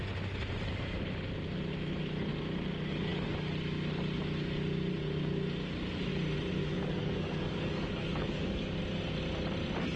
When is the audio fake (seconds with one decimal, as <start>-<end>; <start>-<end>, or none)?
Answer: 6.6-8.8